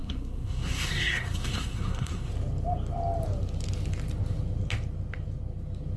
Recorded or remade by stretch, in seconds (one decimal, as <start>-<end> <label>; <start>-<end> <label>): 0.0-2.3 remade; 2.3-6.0 recorded